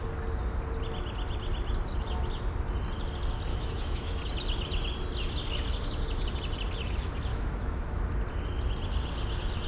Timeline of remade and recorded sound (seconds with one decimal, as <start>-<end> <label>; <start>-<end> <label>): 0.0-3.5 recorded; 3.5-4.2 remade; 4.2-7.3 recorded; 7.3-8.0 remade; 8.0-9.7 recorded